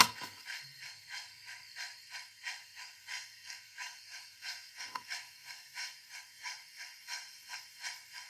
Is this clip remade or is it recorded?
remade